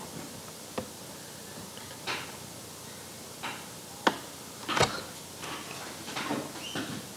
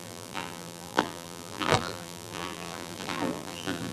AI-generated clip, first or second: second